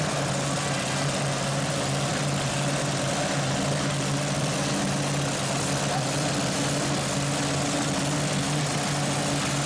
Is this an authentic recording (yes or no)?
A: yes